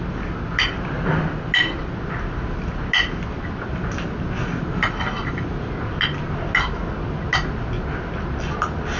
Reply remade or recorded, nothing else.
recorded